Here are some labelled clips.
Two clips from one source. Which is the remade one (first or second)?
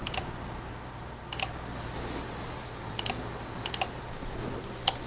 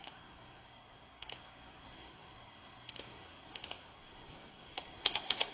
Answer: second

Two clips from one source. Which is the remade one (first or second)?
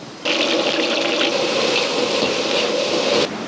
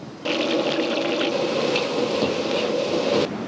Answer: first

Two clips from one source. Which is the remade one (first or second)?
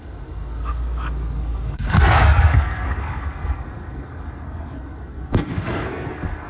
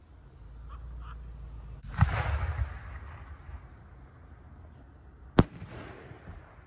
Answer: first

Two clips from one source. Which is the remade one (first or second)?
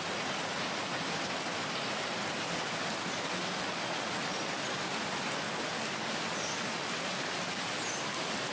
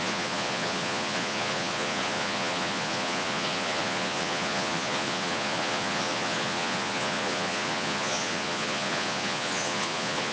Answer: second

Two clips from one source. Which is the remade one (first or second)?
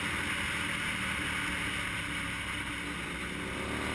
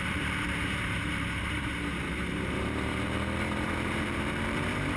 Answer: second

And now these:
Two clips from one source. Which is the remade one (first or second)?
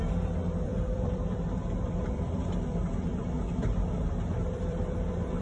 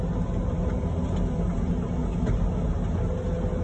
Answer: first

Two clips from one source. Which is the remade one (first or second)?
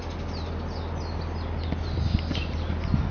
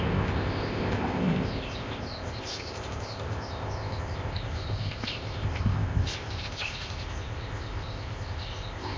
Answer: second